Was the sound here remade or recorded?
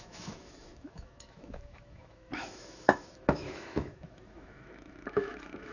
remade